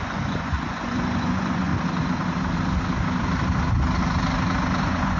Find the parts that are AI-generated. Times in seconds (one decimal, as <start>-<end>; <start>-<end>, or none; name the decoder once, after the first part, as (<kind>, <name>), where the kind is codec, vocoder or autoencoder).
0.0-1.7 (vocoder, Vocos); 4.8-5.2

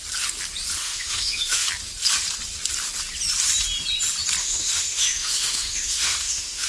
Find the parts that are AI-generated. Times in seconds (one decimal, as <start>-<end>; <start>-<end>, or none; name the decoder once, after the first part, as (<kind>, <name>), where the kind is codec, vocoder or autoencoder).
0.8-1.7 (autoencoder, DAC-VAE); 4.4-6.7